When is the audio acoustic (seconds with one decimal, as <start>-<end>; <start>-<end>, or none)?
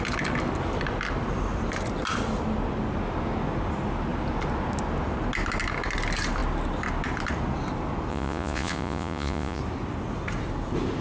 0.0-8.1; 9.6-11.0